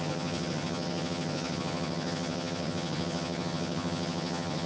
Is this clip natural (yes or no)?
no